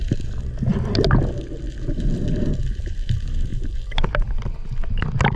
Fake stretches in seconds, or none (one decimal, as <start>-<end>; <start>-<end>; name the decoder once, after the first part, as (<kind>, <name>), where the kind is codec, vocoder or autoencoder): none